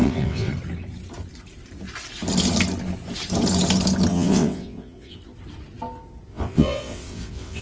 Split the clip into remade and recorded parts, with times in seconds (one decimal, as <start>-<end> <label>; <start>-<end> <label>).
0.0-0.5 remade; 0.5-4.1 recorded; 4.1-5.2 remade; 5.2-6.3 recorded; 6.3-7.6 remade